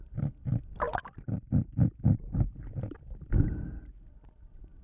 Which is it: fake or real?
real